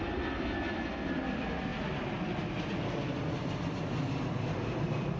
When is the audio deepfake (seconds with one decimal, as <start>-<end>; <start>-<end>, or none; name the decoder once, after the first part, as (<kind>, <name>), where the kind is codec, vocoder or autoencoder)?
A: none